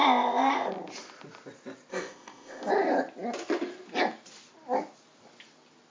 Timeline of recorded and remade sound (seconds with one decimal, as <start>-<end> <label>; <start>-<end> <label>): 0.0-0.7 remade; 0.7-1.9 recorded; 1.9-2.7 remade; 2.7-5.9 recorded